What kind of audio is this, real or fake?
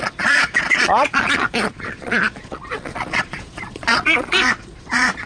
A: fake